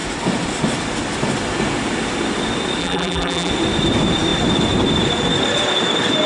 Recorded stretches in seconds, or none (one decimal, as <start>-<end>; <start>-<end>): 0.0-2.8; 3.5-6.3